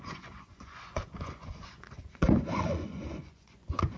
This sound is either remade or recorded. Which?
remade